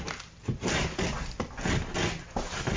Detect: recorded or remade recorded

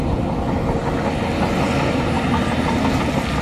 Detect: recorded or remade recorded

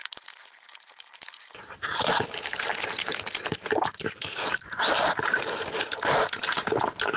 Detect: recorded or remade remade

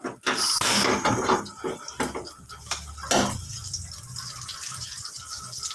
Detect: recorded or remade recorded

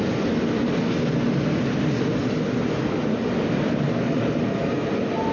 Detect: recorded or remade recorded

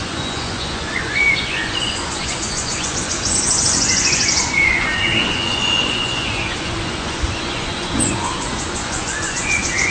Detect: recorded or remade remade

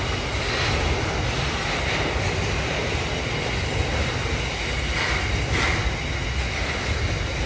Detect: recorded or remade recorded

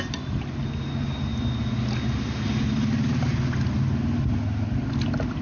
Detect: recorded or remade recorded